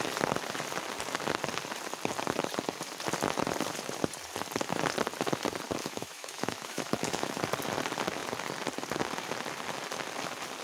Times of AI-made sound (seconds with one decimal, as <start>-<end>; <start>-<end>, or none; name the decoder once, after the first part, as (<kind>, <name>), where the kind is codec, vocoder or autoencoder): 5.8-7.4 (autoencoder, DAC-VAE)